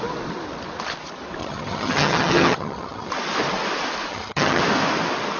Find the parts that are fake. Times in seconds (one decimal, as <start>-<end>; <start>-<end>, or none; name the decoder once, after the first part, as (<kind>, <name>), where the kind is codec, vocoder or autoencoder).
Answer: 1.4-3.1 (vocoder, HiFi-GAN); 4.1-4.6